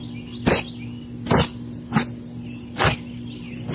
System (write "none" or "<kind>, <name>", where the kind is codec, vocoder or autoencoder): none